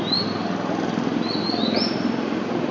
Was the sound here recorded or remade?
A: recorded